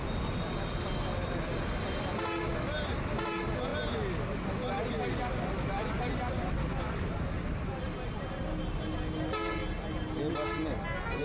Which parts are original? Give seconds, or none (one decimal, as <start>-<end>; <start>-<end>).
0.0-11.2